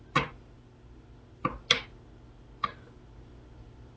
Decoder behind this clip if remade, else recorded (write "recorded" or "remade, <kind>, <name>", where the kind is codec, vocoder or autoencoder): recorded